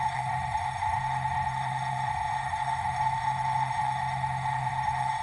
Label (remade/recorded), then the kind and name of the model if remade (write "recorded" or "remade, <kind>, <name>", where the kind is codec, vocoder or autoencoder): remade, codec, SNAC